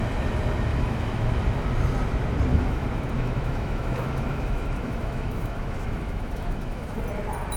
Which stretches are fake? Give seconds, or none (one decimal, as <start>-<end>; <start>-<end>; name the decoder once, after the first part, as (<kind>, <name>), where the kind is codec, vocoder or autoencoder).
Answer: 0.7-1.4 (autoencoder, DAC-VAE); 2.5-7.0